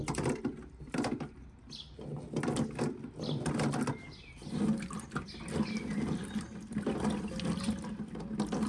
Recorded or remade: recorded